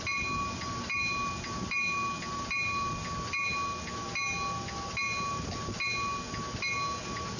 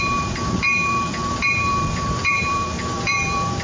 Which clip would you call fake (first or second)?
second